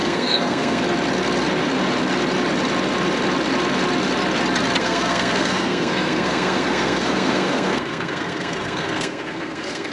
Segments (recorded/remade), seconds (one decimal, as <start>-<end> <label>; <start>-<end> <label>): 0.0-0.8 remade; 0.8-4.8 recorded; 4.8-9.9 remade

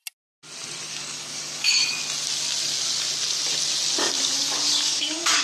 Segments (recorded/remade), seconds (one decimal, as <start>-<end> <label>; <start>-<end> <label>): 0.0-0.9 recorded; 0.9-2.0 remade; 2.0-4.0 recorded; 4.0-5.4 remade